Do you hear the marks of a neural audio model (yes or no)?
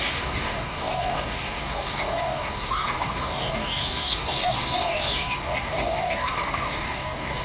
yes